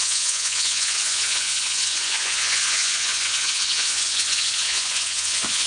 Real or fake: fake